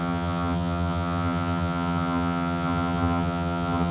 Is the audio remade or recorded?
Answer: remade